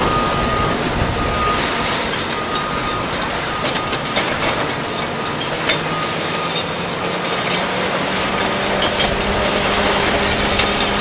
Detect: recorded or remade recorded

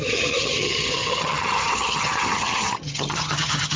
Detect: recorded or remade remade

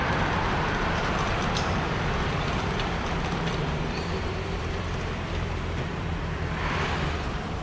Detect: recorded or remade remade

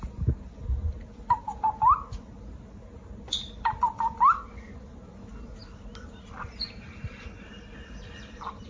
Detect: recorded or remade recorded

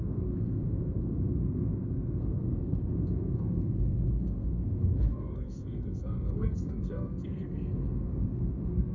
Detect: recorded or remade remade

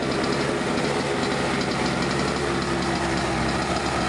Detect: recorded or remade recorded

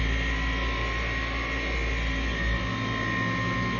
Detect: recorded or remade recorded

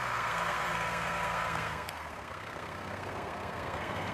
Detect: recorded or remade remade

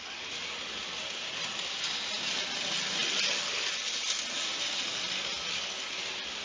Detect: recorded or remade recorded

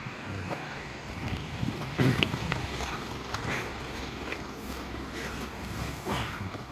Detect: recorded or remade remade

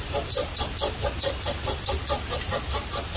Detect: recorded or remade recorded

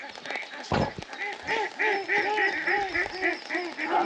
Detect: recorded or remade recorded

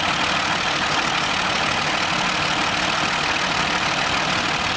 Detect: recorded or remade recorded